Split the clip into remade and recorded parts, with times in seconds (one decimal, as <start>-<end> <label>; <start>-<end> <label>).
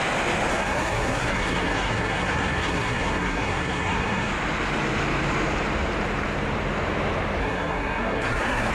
0.0-0.5 recorded; 0.5-4.3 remade; 4.3-7.4 recorded; 7.4-8.7 remade